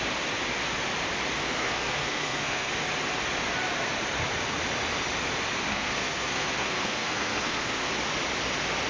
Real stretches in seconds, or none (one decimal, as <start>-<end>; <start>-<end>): 0.0-1.4; 2.7-5.7; 7.9-8.9